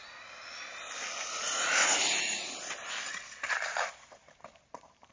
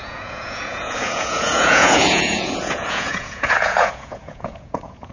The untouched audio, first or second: first